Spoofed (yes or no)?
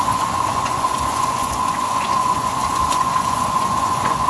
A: yes